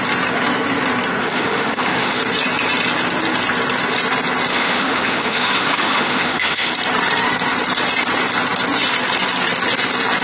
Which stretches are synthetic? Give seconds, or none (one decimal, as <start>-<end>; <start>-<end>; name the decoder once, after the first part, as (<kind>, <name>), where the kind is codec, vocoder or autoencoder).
1.2-2.2 (autoencoder, DAC-VAE); 4.5-6.7